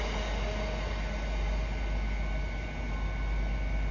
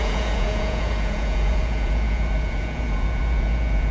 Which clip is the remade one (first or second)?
second